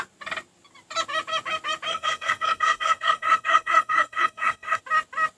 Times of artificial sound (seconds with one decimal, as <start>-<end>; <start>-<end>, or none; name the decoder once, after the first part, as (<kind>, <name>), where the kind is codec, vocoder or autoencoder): 1.9-4.8 (codec, SNAC)